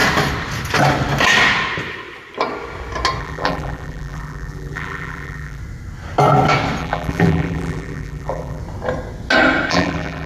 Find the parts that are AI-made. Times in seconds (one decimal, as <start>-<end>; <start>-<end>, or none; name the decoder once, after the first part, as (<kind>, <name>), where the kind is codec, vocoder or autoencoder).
3.2-5.6 (vocoder, BigVGAN v2); 6.8-8.6; 9.7-10.3